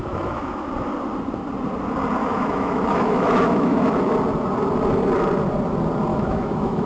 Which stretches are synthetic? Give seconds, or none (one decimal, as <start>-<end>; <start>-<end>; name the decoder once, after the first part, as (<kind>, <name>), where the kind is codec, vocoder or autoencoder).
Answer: 0.0-0.7 (autoencoder, DAC-VAE); 2.2-4.1; 6.1-6.9

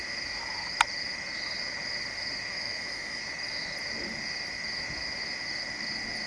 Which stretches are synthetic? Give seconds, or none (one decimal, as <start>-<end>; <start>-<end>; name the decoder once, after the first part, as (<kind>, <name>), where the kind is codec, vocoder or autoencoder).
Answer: 2.5-3.2 (autoencoder, DAC-VAE)